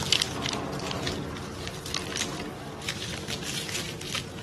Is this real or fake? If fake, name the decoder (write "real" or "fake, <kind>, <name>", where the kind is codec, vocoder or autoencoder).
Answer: real